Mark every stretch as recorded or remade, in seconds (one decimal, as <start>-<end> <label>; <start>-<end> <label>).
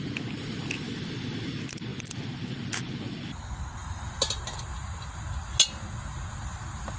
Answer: 0.0-7.0 recorded